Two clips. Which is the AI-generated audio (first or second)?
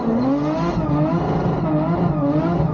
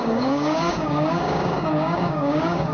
second